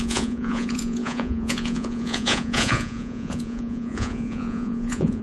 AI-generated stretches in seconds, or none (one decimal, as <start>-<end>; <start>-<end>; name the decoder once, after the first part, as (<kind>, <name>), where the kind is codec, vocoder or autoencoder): 0.0-5.2 (vocoder, Vocos)